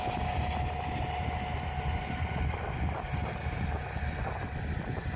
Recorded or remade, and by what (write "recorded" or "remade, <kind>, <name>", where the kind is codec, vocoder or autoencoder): recorded